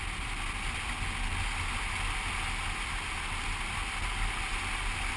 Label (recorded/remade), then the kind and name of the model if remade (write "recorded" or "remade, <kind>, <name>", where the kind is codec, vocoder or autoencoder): recorded